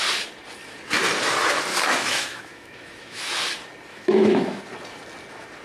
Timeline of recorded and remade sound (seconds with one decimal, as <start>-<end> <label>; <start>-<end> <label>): 0.0-1.7 recorded; 1.7-3.4 remade; 3.4-3.9 recorded; 3.9-4.6 remade; 4.6-5.6 recorded